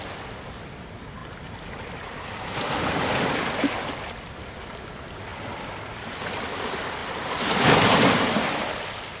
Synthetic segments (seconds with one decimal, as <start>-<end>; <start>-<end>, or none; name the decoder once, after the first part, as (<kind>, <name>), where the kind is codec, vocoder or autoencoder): 5.3-6.4 (vocoder, BigVGAN v2); 7.0-8.1